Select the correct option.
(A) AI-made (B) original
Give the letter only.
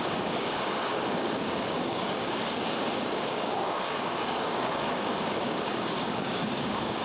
A